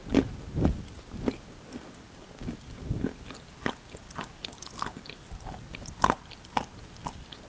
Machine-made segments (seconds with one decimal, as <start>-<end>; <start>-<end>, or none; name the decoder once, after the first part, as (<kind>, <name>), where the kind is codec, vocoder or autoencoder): none

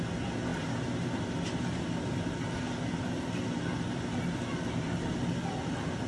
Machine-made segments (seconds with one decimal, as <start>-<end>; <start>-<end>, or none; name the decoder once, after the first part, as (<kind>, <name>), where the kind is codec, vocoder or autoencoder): none

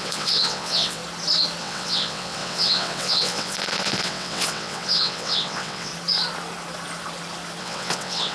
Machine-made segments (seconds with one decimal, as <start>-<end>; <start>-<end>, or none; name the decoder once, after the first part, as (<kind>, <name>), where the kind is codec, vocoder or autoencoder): 0.0-1.0 (vocoder, WaveNeXt); 1.6-5.9; 7.6-8.3